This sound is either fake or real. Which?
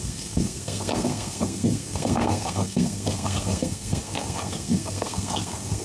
fake